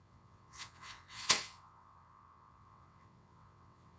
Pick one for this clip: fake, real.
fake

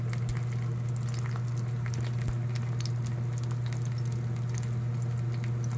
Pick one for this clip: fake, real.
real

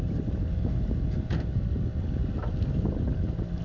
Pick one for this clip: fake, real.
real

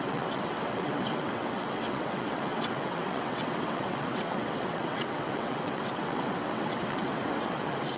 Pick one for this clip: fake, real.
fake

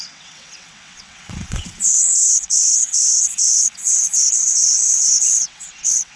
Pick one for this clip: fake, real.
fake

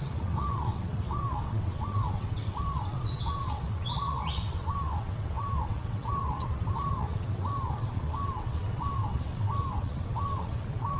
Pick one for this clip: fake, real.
fake